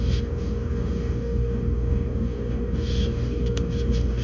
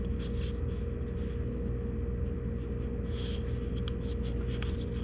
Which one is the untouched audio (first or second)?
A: second